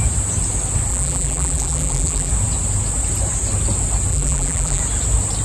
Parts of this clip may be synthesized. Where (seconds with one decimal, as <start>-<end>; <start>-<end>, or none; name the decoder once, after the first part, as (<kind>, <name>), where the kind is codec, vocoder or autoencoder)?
0.9-2.3 (vocoder, BigVGAN v2); 4.1-4.8

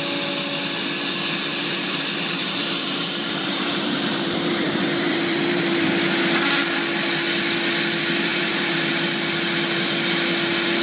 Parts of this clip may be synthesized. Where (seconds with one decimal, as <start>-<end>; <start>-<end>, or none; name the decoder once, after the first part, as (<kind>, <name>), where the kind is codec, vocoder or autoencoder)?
1.5-5.9 (vocoder, BigVGAN v2); 8.3-8.9

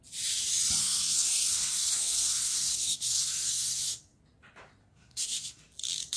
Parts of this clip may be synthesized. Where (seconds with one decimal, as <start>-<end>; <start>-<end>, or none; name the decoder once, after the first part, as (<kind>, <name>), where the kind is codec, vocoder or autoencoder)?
0.8-4.2 (codec, SNAC); 4.8-5.6

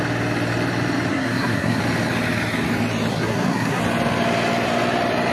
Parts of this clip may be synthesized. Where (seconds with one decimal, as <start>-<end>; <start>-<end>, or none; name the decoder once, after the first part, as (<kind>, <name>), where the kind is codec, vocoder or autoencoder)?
1.1-1.8 (codec, SNAC); 3.1-3.8

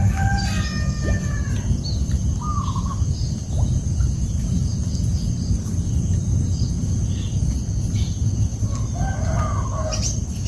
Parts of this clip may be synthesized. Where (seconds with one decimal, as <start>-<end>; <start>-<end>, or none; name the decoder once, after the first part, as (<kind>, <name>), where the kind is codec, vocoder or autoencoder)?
none